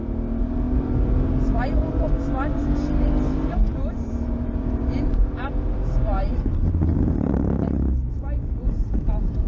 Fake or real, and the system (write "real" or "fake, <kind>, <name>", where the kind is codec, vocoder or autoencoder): fake, vocoder, BigVGAN v2